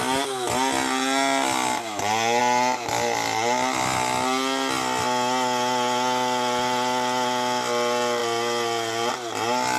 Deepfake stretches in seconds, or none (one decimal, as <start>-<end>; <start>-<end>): none